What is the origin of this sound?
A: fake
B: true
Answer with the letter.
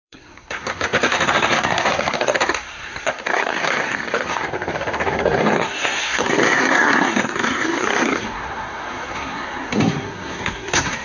A